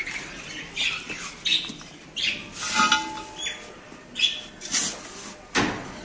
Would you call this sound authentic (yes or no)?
yes